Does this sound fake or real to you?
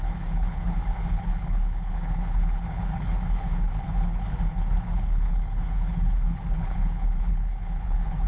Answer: fake